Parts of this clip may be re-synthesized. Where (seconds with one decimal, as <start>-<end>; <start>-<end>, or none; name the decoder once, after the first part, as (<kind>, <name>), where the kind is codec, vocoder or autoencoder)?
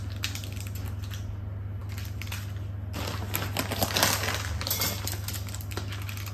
none